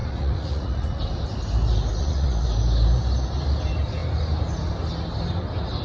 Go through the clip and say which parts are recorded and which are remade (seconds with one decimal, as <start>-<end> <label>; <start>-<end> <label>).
0.0-1.0 remade; 1.0-2.0 recorded; 2.0-2.5 remade; 2.5-5.8 recorded